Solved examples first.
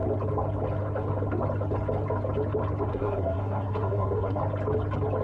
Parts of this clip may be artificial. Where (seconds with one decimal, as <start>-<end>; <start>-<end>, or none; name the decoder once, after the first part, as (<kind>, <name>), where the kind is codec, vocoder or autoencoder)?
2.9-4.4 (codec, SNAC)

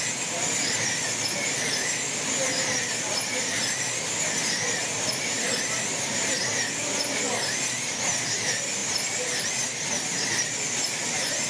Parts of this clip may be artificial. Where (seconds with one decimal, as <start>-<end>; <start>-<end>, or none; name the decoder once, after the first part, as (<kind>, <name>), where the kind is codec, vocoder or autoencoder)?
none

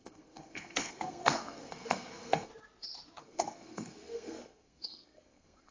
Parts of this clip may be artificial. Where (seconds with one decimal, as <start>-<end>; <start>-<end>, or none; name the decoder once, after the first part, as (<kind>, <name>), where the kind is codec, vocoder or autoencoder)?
0.0-2.5 (codec, SNAC); 3.2-5.7